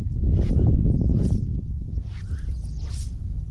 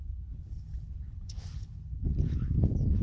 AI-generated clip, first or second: second